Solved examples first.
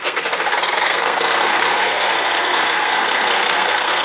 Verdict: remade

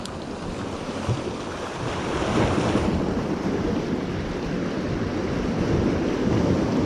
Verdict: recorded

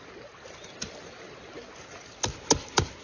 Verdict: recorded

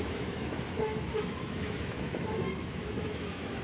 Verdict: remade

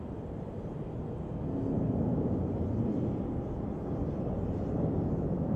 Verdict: recorded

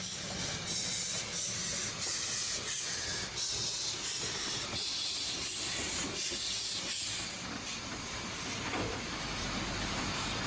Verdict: recorded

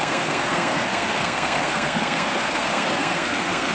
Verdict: remade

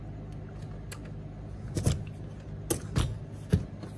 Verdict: recorded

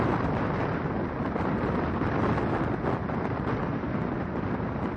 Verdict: recorded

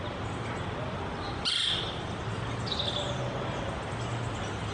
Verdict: recorded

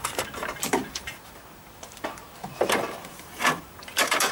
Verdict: remade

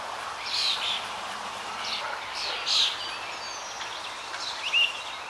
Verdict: recorded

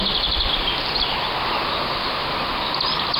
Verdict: recorded